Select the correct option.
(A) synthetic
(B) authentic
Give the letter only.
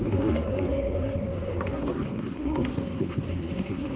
A